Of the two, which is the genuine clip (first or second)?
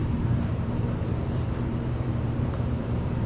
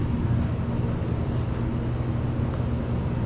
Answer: second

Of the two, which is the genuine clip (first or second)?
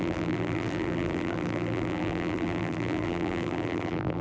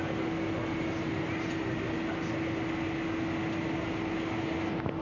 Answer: second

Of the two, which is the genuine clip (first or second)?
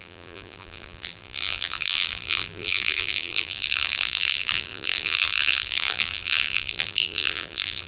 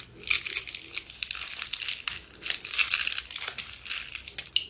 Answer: second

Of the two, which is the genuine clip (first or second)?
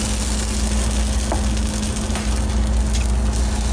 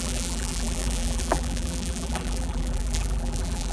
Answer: first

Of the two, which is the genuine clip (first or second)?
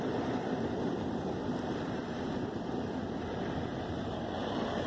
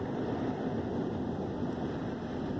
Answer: second